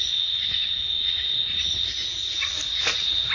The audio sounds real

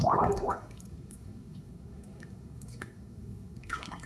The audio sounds fake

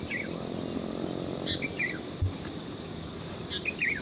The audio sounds real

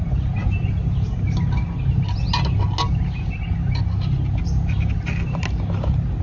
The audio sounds real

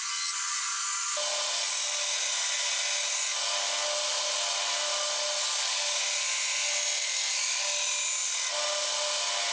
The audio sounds real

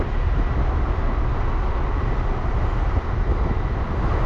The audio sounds real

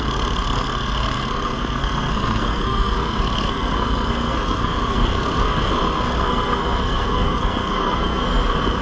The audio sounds fake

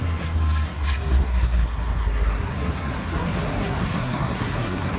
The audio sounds fake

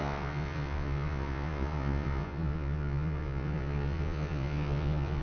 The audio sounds fake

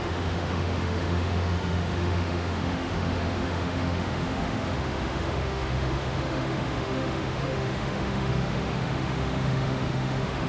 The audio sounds fake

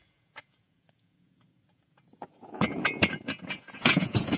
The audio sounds fake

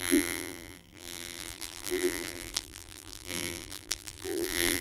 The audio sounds fake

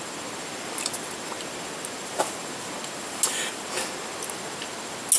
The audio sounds real